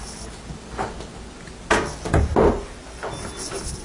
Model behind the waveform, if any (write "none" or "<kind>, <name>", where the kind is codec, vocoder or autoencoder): none